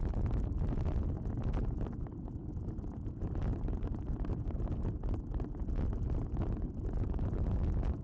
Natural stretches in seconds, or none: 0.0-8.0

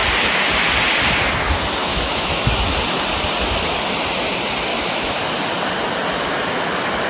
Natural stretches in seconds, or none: 0.0-1.8; 2.7-4.7; 5.2-7.1